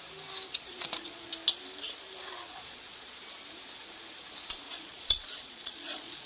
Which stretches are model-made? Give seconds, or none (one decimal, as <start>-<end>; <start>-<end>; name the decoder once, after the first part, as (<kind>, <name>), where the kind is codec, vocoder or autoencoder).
0.6-1.3 (vocoder, Vocos); 2.5-3.2; 4.7-6.3